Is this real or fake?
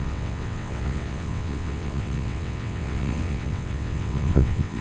fake